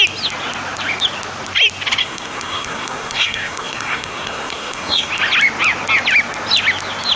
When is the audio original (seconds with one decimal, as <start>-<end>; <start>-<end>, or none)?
0.0-2.0; 5.1-7.2

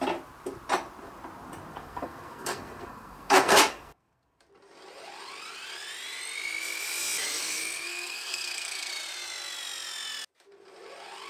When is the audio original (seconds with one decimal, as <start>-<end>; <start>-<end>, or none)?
0.0-1.7; 4.4-7.4; 8.9-11.3

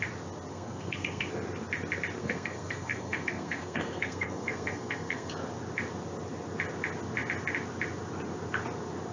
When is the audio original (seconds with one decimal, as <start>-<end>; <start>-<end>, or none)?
0.0-0.5; 1.3-2.2; 5.3-9.1

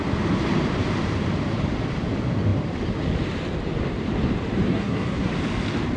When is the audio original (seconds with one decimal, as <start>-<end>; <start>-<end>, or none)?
0.0-4.7; 5.3-6.0

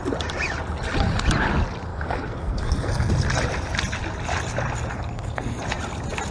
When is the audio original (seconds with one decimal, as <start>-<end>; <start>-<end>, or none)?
0.0-1.9; 3.1-4.9; 5.6-6.3